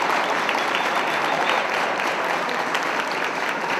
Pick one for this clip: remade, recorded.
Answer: remade